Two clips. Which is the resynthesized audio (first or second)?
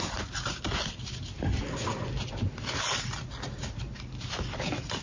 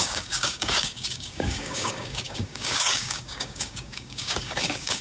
second